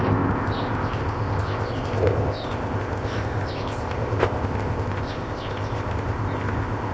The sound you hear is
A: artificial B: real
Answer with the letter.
A